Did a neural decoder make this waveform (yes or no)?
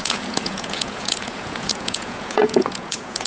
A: yes